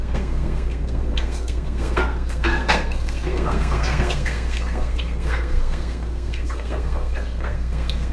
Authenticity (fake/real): fake